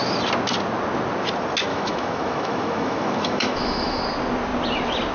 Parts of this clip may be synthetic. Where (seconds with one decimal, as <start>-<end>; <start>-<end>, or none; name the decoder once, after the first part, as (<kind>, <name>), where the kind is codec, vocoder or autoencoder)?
1.7-4.0 (autoencoder, DAC-VAE)